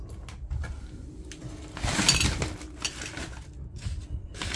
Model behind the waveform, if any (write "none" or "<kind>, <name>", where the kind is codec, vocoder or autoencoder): none